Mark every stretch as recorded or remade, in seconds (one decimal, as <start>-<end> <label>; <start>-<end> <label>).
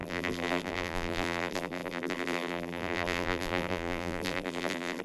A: 0.0-5.0 remade